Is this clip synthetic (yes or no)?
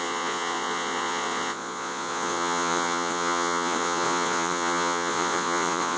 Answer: yes